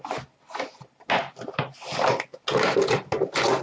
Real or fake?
real